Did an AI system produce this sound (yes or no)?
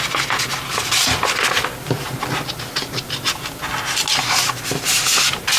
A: no